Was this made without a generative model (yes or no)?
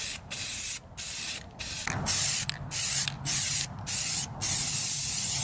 yes